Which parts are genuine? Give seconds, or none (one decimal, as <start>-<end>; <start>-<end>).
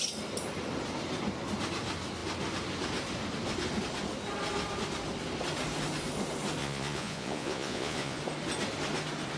0.0-6.6; 8.2-9.4